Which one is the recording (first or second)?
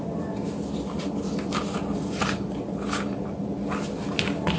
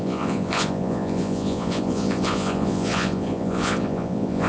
first